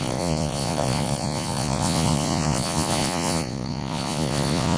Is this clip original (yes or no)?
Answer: no